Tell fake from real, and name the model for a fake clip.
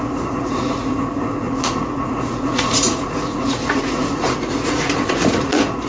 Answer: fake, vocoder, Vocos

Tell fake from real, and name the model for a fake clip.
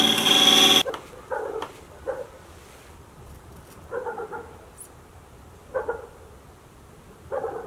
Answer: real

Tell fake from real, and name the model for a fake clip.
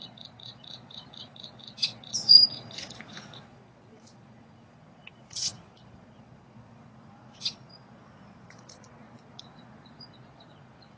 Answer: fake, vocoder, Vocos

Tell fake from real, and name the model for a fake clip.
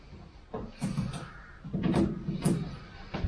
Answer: real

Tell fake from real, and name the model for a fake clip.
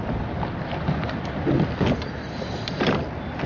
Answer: real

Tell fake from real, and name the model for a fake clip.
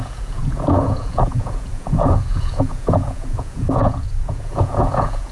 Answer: fake, vocoder, Vocos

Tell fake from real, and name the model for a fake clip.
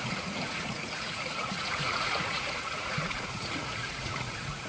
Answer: fake, vocoder, Vocos